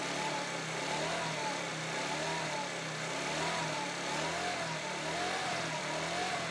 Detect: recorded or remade recorded